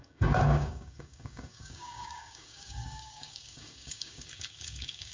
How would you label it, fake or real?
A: fake